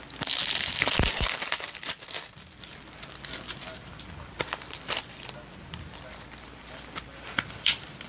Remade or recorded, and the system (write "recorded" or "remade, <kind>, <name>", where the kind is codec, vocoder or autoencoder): remade, vocoder, BigVGAN v2